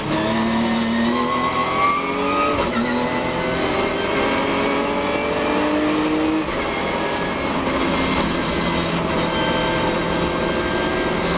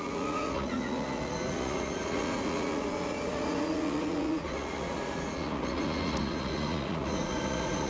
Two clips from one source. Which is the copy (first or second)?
second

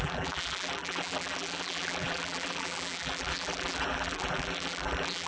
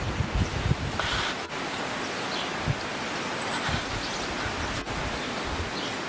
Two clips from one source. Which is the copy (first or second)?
first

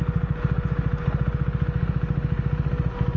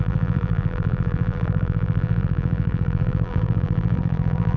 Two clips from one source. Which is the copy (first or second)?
second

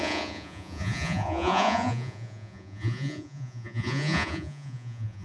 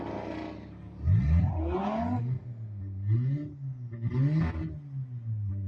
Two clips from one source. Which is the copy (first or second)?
first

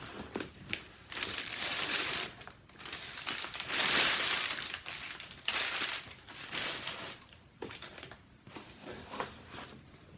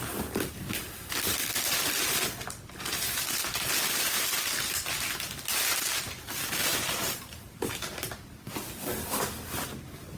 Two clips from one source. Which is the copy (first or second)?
first